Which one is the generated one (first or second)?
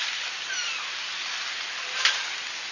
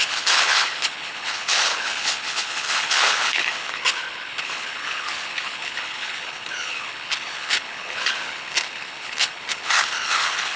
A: second